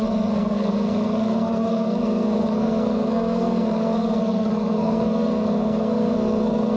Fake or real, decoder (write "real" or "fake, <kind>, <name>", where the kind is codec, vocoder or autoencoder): fake, codec, SNAC